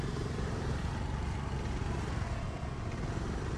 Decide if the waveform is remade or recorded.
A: recorded